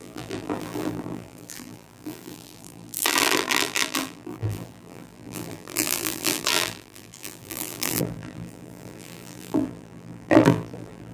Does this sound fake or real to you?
fake